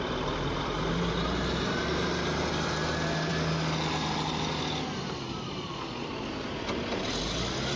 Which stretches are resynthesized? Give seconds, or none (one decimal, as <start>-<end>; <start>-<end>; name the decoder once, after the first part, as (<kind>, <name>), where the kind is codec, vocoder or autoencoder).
none